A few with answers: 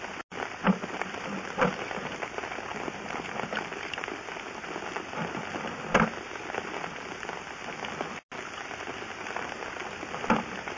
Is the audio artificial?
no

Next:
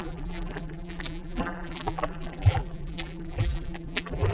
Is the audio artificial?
yes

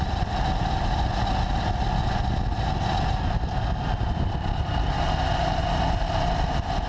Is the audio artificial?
no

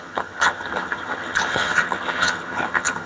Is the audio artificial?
yes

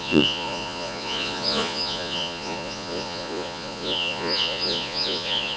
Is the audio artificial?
yes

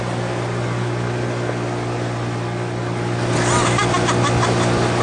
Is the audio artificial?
no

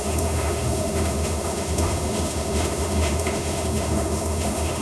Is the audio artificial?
yes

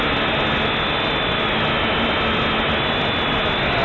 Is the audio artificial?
no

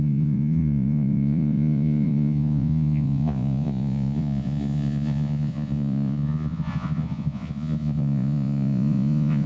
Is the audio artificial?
yes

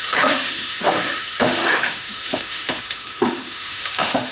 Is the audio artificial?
yes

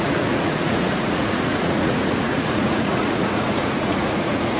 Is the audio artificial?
yes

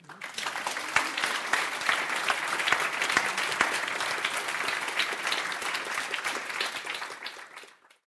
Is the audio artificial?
no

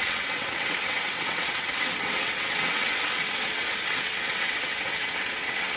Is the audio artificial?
yes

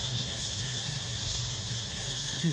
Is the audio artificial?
yes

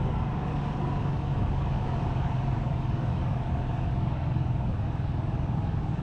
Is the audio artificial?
yes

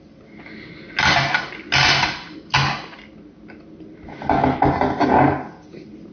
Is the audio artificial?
no